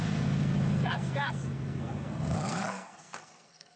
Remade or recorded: remade